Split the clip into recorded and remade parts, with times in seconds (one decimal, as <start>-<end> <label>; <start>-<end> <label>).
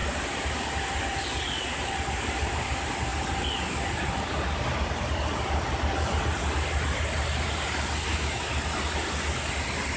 0.0-8.1 recorded; 8.1-8.6 remade; 8.6-10.0 recorded